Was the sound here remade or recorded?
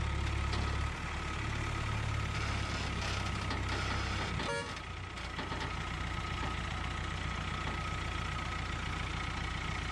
recorded